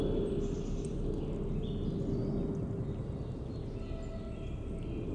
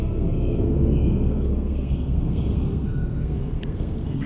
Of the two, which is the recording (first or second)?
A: first